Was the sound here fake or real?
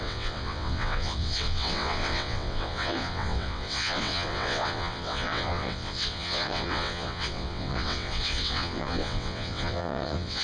fake